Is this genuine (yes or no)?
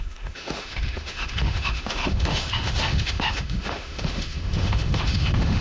no